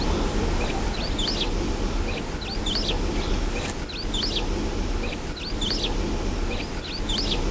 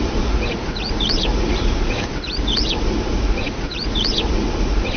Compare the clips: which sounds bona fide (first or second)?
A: first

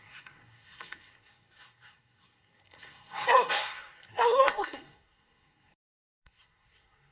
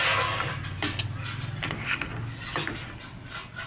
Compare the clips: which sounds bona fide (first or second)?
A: second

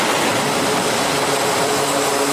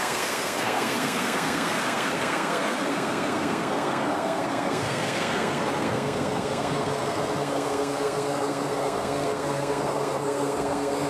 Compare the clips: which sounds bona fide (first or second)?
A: first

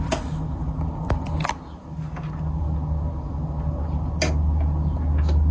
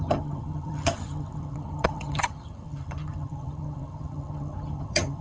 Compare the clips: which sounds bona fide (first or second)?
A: first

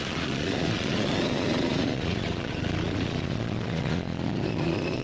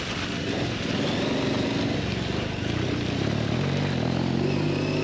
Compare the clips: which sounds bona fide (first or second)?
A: second